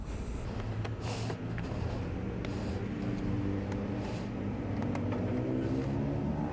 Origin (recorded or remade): recorded